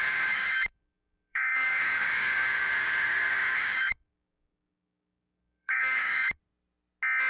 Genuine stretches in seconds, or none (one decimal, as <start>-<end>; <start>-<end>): 6.4-7.3